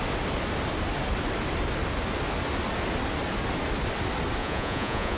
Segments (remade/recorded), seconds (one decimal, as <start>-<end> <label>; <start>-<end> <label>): 0.0-4.4 recorded; 4.4-5.2 remade

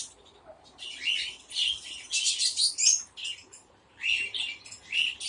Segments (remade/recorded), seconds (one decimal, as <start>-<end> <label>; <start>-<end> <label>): 0.0-3.4 recorded; 3.4-4.7 remade; 4.7-5.3 recorded

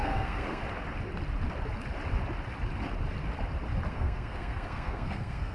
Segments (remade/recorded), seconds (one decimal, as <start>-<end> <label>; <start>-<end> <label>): 0.0-0.6 remade; 0.6-3.9 recorded; 3.9-5.5 remade

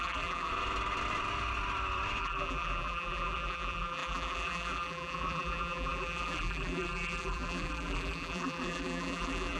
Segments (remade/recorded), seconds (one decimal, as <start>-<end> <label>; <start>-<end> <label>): 0.0-0.5 remade; 0.5-2.2 recorded; 2.2-9.6 remade

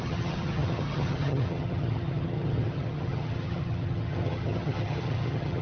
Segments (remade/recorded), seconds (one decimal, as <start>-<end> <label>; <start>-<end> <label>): 0.0-5.6 remade

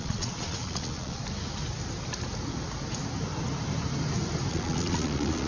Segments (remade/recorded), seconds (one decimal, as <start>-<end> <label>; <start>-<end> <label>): 0.0-1.2 remade; 1.2-4.5 recorded; 4.5-5.5 remade

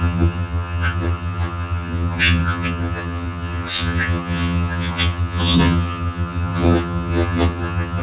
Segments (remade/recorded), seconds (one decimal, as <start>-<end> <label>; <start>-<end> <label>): 0.0-8.0 remade